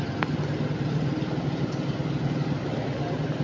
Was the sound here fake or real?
real